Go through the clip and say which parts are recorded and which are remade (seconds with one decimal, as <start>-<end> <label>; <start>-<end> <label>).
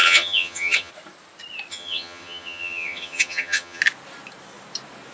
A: 0.0-0.9 remade; 0.9-1.7 recorded; 1.7-3.8 remade; 3.8-5.1 recorded